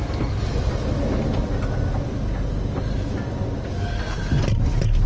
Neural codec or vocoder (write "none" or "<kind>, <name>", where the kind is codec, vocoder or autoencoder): none